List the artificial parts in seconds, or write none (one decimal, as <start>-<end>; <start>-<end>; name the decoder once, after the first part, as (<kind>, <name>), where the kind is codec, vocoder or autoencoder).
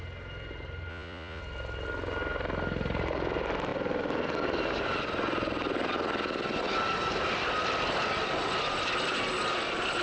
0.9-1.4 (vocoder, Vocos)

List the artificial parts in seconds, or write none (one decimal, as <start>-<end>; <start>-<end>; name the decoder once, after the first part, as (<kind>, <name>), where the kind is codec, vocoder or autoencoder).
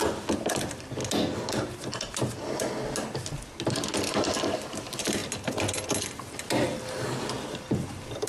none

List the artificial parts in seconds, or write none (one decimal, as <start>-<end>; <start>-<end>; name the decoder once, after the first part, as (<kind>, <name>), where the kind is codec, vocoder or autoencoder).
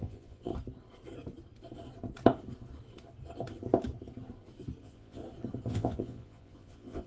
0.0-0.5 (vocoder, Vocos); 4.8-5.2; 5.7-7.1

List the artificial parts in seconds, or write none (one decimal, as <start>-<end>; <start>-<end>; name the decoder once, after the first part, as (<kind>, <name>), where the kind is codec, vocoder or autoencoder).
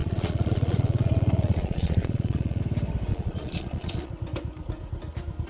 0.0-2.6 (vocoder, Vocos); 3.1-4.1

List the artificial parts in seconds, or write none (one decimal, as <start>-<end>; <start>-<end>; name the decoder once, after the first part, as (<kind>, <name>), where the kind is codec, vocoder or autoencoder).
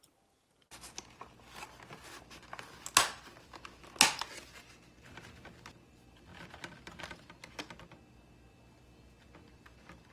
none